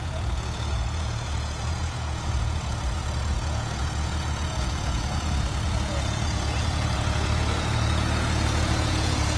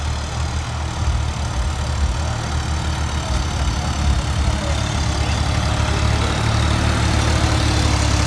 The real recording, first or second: second